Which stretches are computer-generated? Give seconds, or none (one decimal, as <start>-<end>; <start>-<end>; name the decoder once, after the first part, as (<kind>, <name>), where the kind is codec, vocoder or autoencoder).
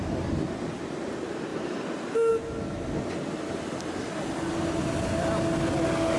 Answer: 1.5-2.3 (vocoder, BigVGAN v2)